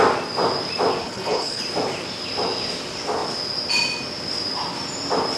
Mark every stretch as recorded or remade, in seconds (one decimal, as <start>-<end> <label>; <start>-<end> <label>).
0.0-1.0 recorded; 1.0-1.6 remade; 1.6-5.4 recorded